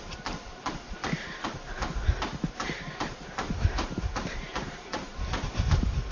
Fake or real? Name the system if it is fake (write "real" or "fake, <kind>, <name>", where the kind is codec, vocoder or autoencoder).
fake, vocoder, BigVGAN v2